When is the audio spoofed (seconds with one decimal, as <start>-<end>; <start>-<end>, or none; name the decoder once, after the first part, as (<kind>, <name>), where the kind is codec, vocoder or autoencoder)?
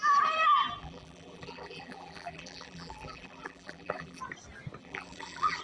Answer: 0.8-4.2 (vocoder, BigVGAN v2); 4.8-5.6